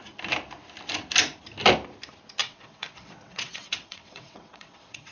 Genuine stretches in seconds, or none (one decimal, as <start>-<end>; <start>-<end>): 0.0-2.4